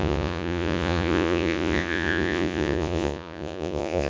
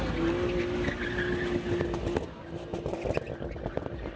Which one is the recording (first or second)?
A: second